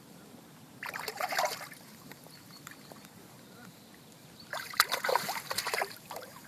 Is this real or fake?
fake